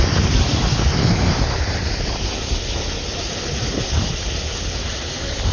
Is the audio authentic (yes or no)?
yes